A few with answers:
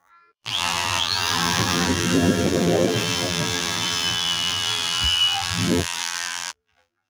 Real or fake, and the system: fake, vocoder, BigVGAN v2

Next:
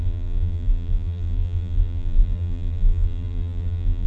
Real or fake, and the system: fake, vocoder, BigVGAN v2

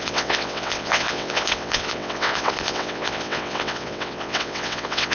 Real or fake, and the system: fake, vocoder, WaveNeXt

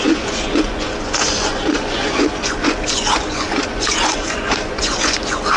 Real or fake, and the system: fake, vocoder, Vocos